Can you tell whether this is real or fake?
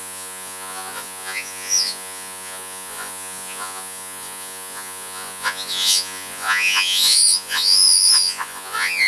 fake